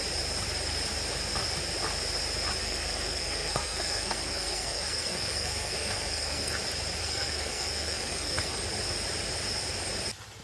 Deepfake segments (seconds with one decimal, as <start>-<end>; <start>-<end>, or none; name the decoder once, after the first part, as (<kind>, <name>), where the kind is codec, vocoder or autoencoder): 2.6-6.5 (codec, SNAC); 7.0-8.6